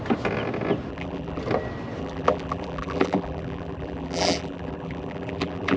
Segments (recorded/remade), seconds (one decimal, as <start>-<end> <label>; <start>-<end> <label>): 0.0-0.9 recorded; 0.9-1.4 remade; 1.4-2.0 recorded; 2.0-5.8 remade